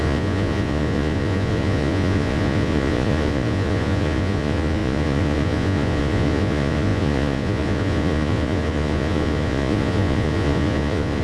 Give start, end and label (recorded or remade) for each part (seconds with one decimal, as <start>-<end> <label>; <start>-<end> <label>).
0.0-11.2 remade